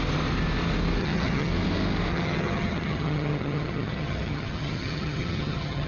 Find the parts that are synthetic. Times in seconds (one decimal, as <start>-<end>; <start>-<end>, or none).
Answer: 1.0-1.5; 2.1-5.9